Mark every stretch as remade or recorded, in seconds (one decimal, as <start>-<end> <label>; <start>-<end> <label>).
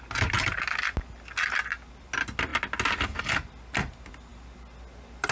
0.0-5.3 recorded